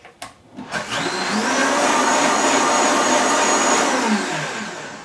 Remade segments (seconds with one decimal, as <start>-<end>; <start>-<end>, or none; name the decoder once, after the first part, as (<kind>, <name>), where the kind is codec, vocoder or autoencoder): none